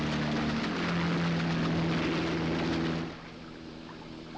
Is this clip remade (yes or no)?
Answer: no